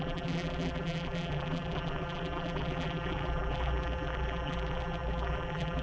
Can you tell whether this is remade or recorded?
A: remade